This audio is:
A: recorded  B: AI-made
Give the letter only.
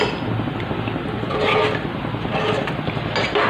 A